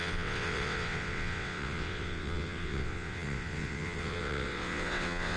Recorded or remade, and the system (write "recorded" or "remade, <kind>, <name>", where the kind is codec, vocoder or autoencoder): remade, vocoder, WaveNeXt